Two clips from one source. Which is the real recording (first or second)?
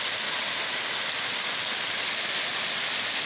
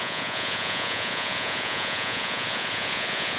first